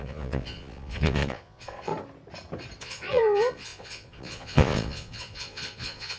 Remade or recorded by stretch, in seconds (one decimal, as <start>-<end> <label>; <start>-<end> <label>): 0.0-1.9 remade; 1.9-2.8 recorded; 2.8-6.2 remade

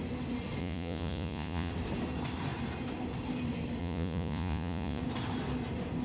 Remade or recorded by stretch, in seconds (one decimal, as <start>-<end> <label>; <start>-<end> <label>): 0.0-0.6 recorded; 0.6-1.7 remade; 1.7-3.8 recorded; 3.8-5.0 remade; 5.0-6.0 recorded